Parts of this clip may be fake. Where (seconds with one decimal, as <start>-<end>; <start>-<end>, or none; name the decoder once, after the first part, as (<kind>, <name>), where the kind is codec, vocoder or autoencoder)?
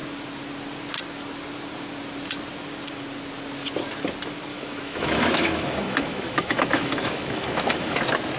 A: 4.5-8.0 (autoencoder, DAC-VAE)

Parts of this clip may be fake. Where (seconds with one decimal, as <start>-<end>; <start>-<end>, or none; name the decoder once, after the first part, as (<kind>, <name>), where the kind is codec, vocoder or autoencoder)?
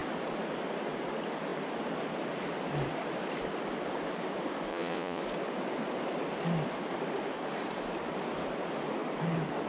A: 4.7-5.2 (vocoder, Vocos)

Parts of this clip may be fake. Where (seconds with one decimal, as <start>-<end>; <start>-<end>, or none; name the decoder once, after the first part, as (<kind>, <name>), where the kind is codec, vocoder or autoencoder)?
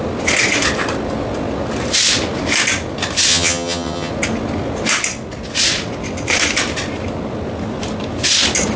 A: 3.3-4.1 (vocoder, HiFi-GAN)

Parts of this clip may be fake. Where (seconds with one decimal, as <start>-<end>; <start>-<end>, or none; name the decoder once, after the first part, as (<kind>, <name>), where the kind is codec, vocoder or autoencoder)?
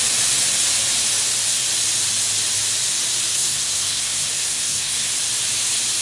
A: 3.3-5.1 (codec, SNAC)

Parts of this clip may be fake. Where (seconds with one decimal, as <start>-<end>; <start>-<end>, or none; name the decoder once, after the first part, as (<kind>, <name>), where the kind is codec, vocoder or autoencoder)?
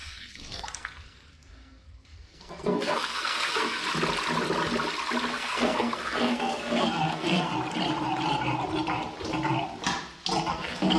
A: 0.0-3.8 (codec, SNAC); 5.3-7.5; 10.5-11.0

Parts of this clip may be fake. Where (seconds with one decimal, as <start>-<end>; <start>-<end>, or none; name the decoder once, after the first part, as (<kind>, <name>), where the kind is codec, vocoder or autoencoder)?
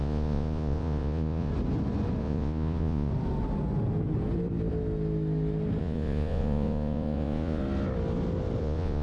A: 0.0-1.5 (vocoder, Vocos); 2.2-3.1; 5.8-7.6; 8.6-9.0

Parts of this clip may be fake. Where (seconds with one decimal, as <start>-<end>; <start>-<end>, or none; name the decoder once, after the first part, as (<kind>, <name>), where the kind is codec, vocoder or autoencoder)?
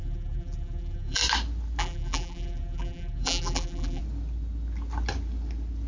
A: 0.0-1.2 (vocoder, BigVGAN v2); 1.8-4.0